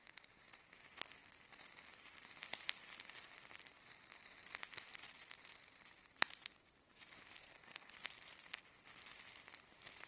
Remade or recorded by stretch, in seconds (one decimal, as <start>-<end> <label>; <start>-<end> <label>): 0.0-7.4 recorded; 7.4-7.9 remade; 7.9-10.1 recorded